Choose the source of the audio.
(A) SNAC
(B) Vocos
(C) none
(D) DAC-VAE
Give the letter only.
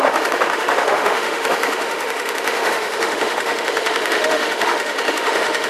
D